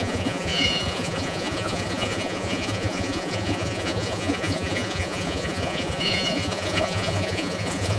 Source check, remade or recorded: remade